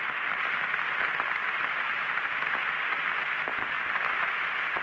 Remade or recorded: recorded